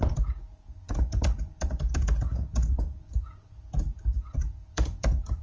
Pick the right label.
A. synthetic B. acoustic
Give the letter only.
A